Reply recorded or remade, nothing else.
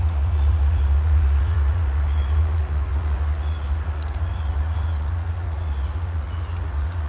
remade